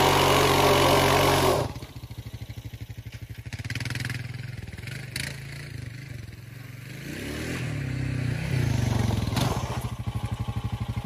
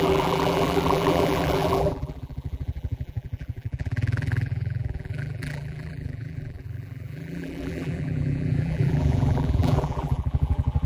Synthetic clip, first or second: second